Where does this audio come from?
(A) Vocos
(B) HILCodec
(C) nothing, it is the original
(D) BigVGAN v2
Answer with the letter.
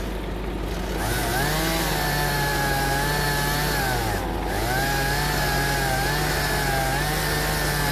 C